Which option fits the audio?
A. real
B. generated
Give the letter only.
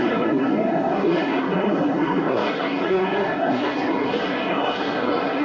B